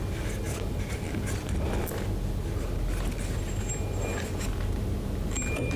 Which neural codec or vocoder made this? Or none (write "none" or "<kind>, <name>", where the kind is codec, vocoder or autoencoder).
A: none